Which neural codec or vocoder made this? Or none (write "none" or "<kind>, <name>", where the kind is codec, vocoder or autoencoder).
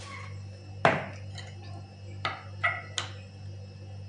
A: none